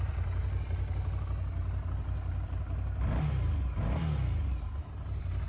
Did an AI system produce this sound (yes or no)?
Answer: no